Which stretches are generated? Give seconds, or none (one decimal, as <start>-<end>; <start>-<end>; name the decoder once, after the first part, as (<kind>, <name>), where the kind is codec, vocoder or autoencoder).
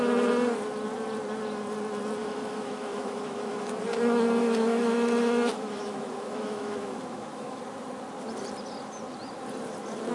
2.2-3.7 (autoencoder, DAC-VAE); 4.4-7.6